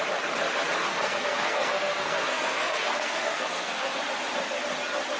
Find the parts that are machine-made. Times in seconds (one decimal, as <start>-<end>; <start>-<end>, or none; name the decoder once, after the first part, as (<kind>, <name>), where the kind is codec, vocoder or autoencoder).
0.9-4.0 (codec, SNAC)